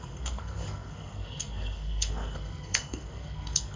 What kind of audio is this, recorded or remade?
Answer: remade